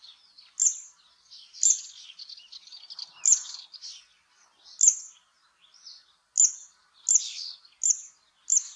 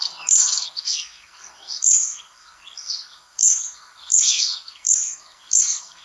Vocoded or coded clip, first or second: second